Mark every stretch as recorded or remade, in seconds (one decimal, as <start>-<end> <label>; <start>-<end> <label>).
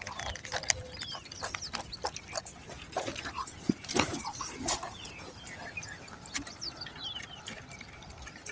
0.0-2.6 recorded; 2.6-5.1 remade; 5.1-8.5 recorded